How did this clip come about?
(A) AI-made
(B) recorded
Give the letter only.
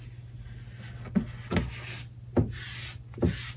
B